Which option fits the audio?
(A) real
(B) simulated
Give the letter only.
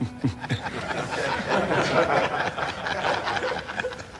A